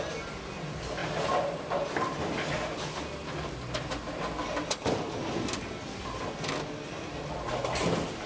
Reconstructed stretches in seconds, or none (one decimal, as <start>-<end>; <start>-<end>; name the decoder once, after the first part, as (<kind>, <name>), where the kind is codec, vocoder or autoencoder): none